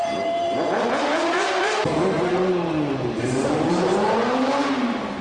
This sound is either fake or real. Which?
fake